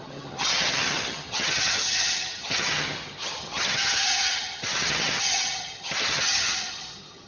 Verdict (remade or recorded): remade